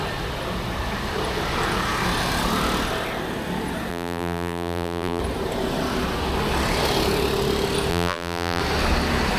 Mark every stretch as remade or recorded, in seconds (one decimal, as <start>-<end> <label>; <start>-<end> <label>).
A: 0.0-3.9 recorded; 3.9-5.2 remade; 5.2-7.9 recorded; 7.9-8.6 remade; 8.6-9.4 recorded